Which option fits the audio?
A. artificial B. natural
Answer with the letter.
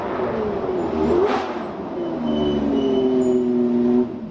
B